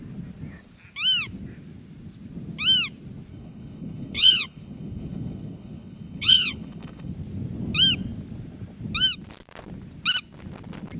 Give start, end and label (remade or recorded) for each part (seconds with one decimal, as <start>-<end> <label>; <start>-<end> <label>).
0.0-3.3 recorded; 3.3-7.1 remade; 7.1-11.0 recorded